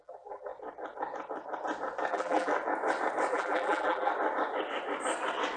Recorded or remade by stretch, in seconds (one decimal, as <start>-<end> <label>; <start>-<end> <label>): 0.0-0.5 remade; 0.5-2.1 recorded; 2.1-2.5 remade; 2.5-3.3 recorded; 3.3-4.1 remade; 4.1-5.6 recorded

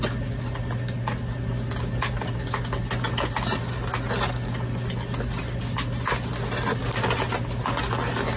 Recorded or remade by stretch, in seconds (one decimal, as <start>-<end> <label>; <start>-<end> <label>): 0.0-8.4 recorded

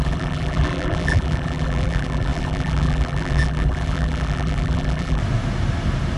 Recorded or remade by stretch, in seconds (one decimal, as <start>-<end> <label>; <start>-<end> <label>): 0.0-5.2 remade; 5.2-6.2 recorded

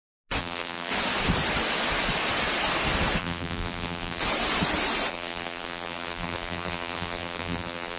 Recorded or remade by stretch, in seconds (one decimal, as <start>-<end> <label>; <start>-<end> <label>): 0.0-0.4 recorded; 0.4-0.9 remade; 0.9-3.2 recorded; 3.2-4.2 remade; 4.2-5.1 recorded; 5.1-8.0 remade

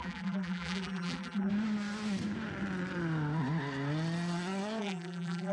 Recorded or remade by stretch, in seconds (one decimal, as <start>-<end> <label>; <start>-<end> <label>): 0.0-1.5 remade; 1.5-4.8 recorded; 4.8-5.5 remade

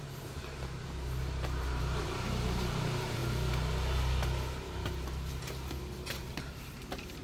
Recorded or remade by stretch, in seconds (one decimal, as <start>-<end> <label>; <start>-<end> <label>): 0.0-3.2 remade; 3.2-6.1 recorded; 6.1-7.2 remade

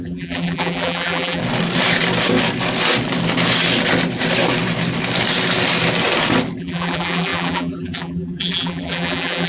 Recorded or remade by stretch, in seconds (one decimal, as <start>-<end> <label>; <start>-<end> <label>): 0.0-1.4 remade; 1.4-6.6 recorded; 6.6-9.5 remade

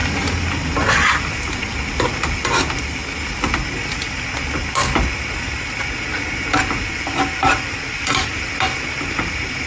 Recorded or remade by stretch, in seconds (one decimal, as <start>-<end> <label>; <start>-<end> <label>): 0.0-1.1 recorded; 1.1-3.0 remade; 3.0-6.9 recorded; 6.9-9.7 remade